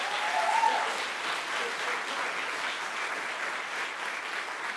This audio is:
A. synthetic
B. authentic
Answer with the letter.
B